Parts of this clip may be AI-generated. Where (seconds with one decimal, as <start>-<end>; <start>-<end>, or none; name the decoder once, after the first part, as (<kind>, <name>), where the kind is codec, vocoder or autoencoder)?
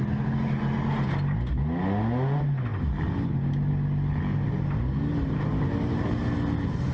none